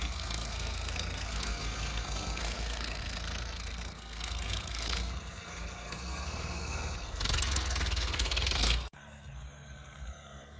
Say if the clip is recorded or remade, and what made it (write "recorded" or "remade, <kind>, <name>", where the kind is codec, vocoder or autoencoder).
remade, codec, SNAC